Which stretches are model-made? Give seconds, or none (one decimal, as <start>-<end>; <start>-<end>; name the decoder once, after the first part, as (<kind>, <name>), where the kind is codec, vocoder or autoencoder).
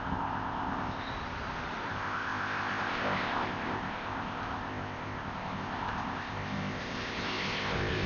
0.0-1.1 (codec, ZipCodec); 1.9-8.1